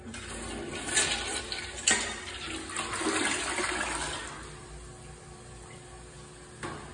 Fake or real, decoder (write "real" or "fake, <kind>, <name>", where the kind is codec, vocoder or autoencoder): real